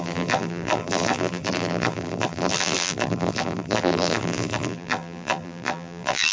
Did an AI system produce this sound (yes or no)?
yes